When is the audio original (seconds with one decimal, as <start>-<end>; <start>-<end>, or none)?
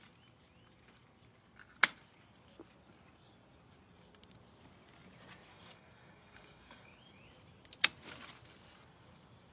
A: 0.0-5.5; 7.0-9.5